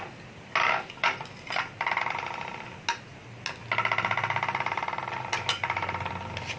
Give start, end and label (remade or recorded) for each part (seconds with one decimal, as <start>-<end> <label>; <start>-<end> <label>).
0.0-6.6 recorded